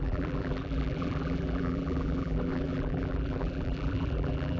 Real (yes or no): no